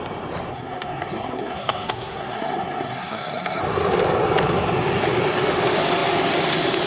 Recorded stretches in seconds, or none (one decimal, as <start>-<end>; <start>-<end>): 0.0-0.5; 3.6-6.9